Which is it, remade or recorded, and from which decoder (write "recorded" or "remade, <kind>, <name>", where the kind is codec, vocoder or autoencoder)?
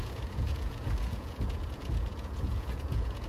remade, vocoder, Vocos